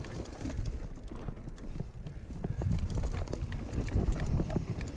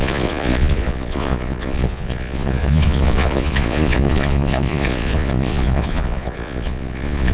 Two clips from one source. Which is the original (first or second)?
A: first